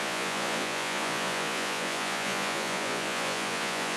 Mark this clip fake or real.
fake